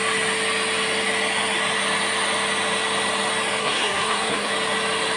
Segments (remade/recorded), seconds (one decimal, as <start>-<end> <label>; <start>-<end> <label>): 0.0-3.6 recorded; 3.6-4.5 remade; 4.5-5.2 recorded